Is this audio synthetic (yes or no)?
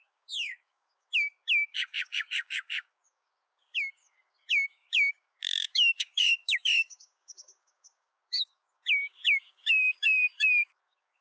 yes